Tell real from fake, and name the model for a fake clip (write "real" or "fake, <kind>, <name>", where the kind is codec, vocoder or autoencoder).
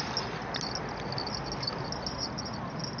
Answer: real